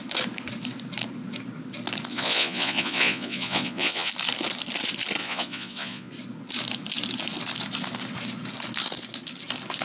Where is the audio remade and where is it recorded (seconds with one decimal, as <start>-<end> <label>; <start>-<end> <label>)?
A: 0.0-2.1 recorded; 2.1-4.1 remade; 4.1-5.2 recorded; 5.2-6.1 remade; 6.1-9.8 recorded